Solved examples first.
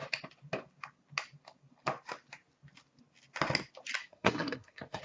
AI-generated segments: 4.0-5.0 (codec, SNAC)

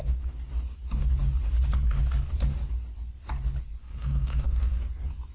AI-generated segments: 3.8-4.8 (codec, SNAC)

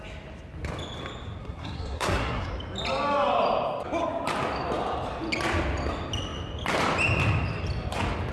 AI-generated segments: 1.4-2.5 (codec, SNAC)